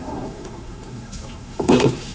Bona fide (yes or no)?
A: no